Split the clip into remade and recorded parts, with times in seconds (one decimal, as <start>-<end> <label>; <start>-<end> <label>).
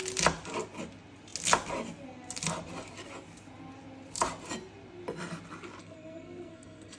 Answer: 0.0-5.8 recorded; 5.8-7.0 remade